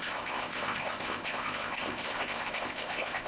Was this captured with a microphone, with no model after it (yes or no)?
no